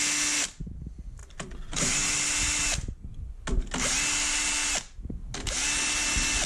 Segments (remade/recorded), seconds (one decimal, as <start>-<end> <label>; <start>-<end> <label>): 0.0-6.5 recorded